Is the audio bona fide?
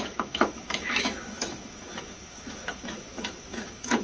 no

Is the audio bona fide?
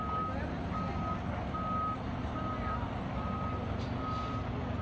yes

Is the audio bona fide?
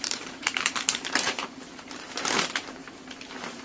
no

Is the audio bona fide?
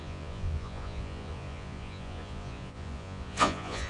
no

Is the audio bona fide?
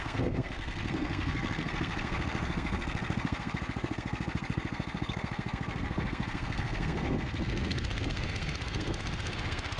no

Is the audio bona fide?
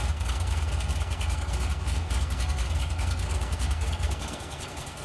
no